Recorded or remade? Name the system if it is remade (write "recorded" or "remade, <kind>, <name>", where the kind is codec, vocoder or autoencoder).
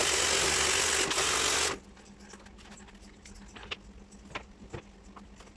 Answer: recorded